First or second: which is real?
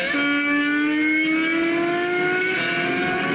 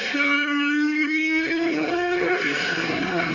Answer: first